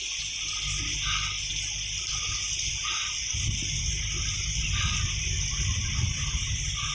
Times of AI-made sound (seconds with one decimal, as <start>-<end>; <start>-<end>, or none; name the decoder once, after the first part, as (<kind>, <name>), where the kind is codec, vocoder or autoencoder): none

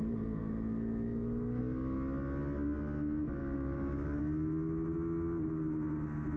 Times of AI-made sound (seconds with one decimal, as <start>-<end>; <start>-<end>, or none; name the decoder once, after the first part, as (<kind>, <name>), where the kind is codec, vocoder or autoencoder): 0.4-1.6 (autoencoder, DAC-VAE); 3.4-4.2

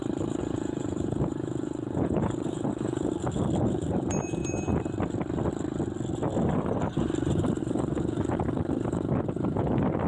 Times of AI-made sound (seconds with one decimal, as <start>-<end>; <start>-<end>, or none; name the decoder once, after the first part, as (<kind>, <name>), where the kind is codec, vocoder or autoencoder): 0.4-3.1 (vocoder, Vocos)

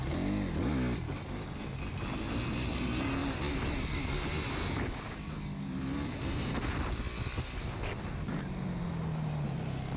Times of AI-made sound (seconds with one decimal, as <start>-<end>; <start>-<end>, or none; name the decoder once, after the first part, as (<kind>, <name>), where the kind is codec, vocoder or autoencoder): none